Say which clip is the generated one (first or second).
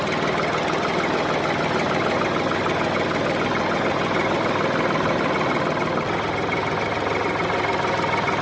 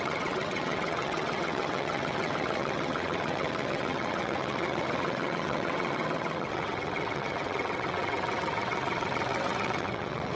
second